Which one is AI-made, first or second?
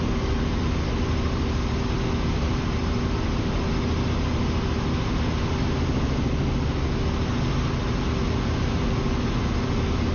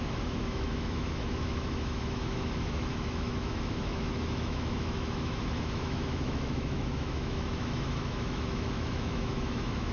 second